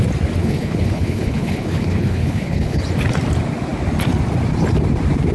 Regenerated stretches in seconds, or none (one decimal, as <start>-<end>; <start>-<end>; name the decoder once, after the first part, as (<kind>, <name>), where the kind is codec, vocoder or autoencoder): 0.4-2.8 (codec, HILCodec)